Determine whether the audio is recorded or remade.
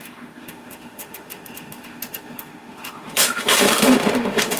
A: remade